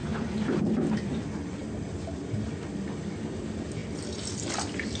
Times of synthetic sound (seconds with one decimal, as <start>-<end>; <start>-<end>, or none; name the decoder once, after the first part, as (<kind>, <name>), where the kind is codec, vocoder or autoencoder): 0.0-5.0 (vocoder, BigVGAN v2)